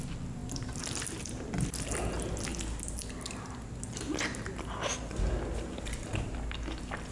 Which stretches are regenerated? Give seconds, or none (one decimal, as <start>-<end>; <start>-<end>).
0.4-1.0